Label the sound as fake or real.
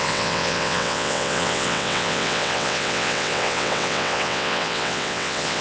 fake